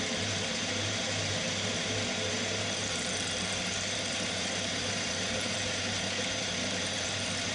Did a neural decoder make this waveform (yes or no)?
yes